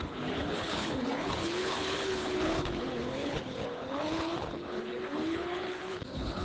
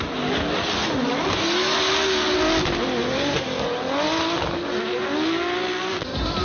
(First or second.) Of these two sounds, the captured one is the second